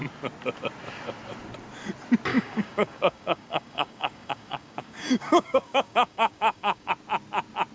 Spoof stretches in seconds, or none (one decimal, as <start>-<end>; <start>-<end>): 2.3-6.9